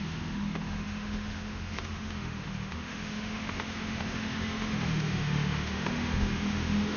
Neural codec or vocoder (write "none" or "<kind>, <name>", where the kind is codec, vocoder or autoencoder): autoencoder, DAC-VAE